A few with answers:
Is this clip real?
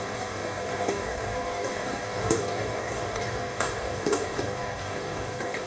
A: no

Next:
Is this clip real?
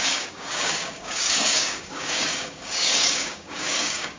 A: no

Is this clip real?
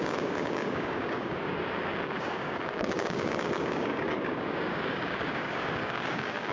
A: no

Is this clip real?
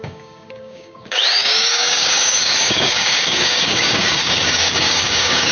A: no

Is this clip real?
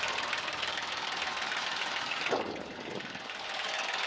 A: no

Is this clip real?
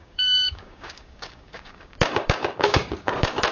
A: no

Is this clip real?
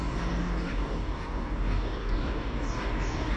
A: no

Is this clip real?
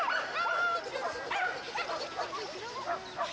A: yes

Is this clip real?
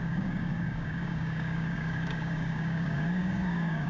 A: no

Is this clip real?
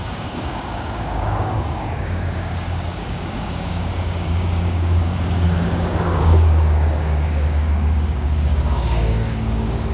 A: no